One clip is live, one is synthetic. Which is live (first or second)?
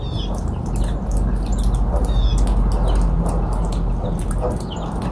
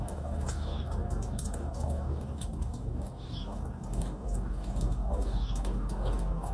first